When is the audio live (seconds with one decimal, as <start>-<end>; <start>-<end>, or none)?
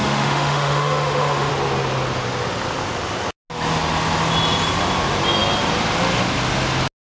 1.5-7.1